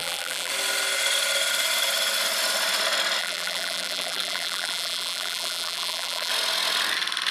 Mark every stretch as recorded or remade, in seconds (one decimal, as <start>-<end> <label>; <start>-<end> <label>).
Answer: 0.0-0.5 remade; 0.5-3.2 recorded; 3.2-6.3 remade; 6.3-7.3 recorded